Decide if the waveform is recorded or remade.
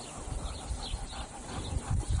recorded